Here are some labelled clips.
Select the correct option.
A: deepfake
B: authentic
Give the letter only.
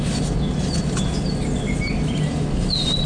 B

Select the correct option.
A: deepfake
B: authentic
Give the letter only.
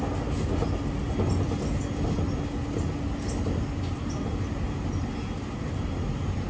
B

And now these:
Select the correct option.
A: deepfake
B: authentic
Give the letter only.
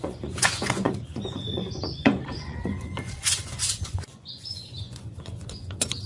A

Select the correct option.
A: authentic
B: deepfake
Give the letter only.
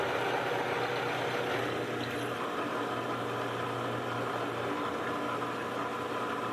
A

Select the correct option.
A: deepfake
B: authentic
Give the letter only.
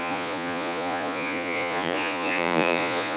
A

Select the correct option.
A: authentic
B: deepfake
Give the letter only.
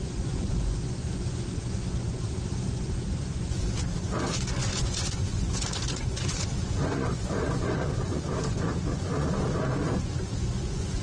B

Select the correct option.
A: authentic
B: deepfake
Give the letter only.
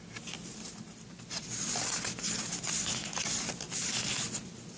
A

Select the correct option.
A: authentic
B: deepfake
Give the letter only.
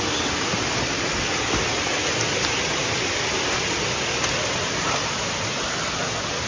A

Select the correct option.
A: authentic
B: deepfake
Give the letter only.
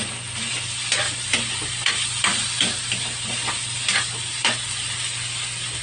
A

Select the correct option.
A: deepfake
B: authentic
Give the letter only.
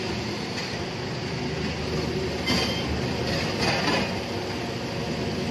B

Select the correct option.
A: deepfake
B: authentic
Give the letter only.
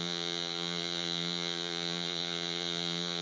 A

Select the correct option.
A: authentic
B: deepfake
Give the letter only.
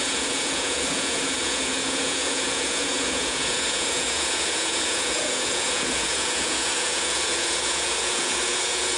B